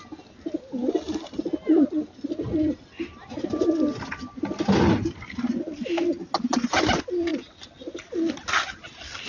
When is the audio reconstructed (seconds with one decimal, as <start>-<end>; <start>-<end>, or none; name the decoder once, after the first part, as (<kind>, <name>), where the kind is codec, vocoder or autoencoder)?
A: none